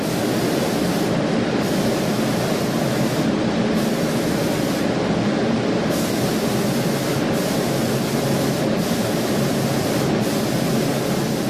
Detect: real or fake real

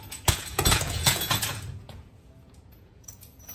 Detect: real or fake fake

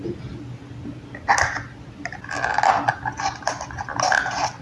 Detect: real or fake real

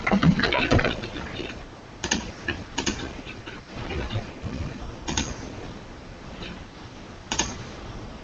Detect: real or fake fake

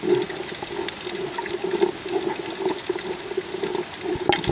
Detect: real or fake real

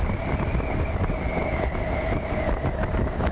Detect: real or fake real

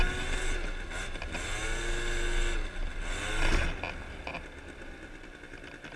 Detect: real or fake real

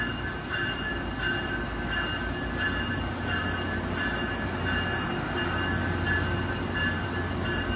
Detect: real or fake real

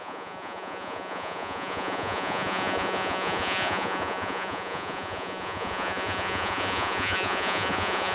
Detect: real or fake fake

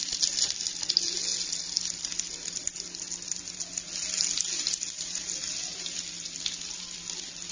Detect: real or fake real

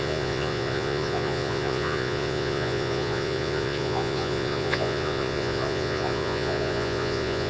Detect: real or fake fake